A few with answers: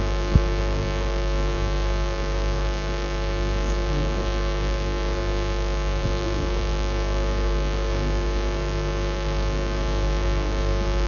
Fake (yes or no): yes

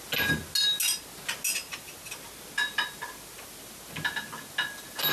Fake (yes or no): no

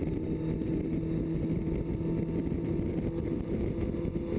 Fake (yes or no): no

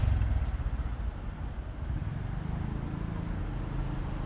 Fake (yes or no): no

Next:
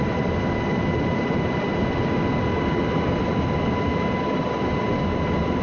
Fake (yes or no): no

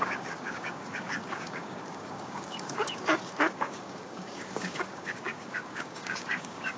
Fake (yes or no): yes